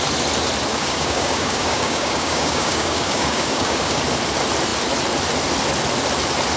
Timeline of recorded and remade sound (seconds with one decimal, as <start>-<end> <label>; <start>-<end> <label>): 0.0-0.7 recorded; 0.7-4.0 remade; 4.0-6.6 recorded

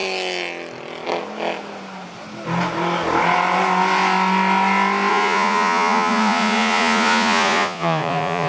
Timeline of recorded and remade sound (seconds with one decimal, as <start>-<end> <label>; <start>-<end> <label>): 0.0-5.1 recorded; 5.1-8.5 remade

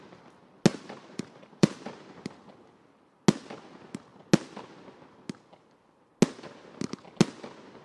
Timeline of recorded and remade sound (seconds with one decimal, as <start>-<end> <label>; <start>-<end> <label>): 0.0-0.7 recorded; 0.7-2.2 remade; 2.2-7.8 recorded

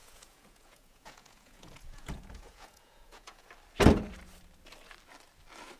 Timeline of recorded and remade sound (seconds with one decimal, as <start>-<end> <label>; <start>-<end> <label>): 0.0-3.5 remade; 3.5-5.8 recorded

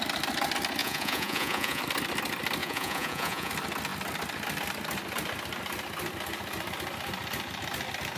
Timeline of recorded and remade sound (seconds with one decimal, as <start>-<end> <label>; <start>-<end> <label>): 0.0-0.8 recorded; 0.8-1.8 remade; 1.8-2.6 recorded; 2.6-3.5 remade; 3.5-8.2 recorded

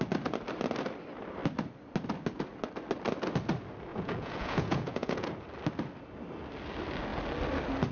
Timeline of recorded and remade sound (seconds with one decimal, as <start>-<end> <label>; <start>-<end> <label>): 0.0-3.9 recorded; 3.9-5.3 remade; 5.3-7.9 recorded